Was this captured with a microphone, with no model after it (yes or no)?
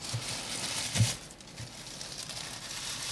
yes